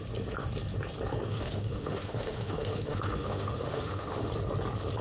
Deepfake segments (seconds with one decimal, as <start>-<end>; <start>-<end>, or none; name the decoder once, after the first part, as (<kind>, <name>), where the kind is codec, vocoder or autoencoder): 1.3-4.3 (autoencoder, DAC-VAE)